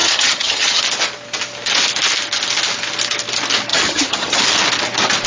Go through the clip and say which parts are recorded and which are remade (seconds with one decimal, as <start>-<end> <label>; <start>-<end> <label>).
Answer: 0.0-0.8 remade; 0.8-3.7 recorded; 3.7-4.4 remade; 4.4-5.3 recorded